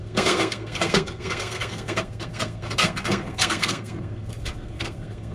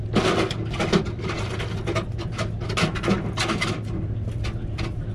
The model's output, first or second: first